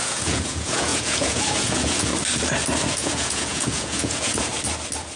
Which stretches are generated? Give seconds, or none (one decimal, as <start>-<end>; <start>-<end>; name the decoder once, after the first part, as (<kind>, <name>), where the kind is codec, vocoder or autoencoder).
0.0-2.1 (vocoder, Vocos); 2.9-4.5